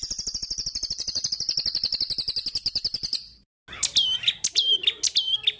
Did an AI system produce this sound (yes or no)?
no